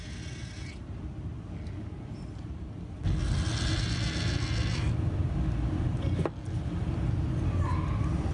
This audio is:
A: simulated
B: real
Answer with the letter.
B